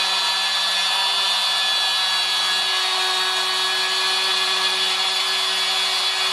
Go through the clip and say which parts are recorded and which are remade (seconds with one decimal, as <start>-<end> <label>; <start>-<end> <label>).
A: 0.0-4.3 recorded; 4.3-5.2 remade; 5.2-6.3 recorded